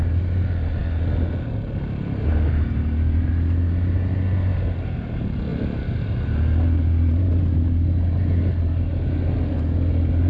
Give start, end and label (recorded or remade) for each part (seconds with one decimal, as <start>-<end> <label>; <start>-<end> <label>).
0.0-10.3 recorded